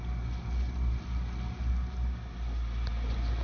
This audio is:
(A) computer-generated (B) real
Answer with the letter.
B